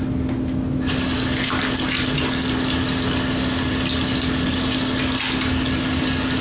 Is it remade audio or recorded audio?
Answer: recorded